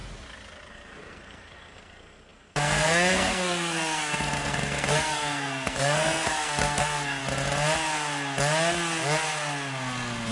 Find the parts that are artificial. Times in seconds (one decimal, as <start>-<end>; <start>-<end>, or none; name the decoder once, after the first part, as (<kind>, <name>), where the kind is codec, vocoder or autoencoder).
0.7-7.2 (codec, SNAC)